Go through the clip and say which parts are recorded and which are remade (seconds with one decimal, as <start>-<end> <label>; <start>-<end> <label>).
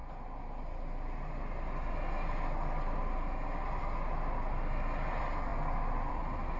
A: 0.0-6.6 recorded